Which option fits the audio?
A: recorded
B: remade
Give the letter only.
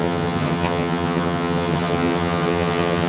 B